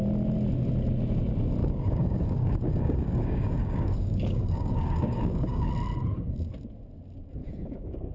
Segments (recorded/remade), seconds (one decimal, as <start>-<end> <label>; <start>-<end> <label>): 0.0-1.6 recorded; 1.6-5.7 remade; 5.7-7.4 recorded; 7.4-8.1 remade